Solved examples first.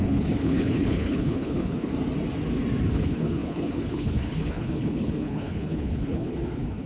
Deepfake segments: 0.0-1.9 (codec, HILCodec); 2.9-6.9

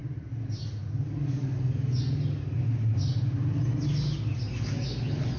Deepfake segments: none

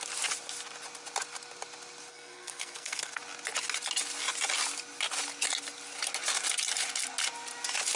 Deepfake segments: 2.1-3.2 (codec, SNAC)

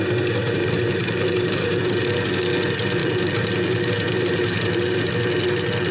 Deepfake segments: 0.4-1.8 (vocoder, BigVGAN v2); 3.0-5.1

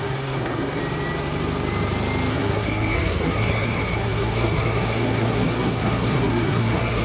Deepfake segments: 0.0-0.8 (codec, SNAC); 2.3-7.0

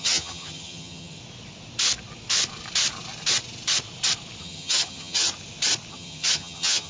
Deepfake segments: 0.0-1.2 (vocoder, HiFi-GAN); 4.4-5.3; 5.9-6.9

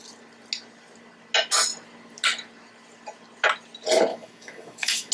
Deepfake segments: 4.1-5.1 (autoencoder, DAC-VAE)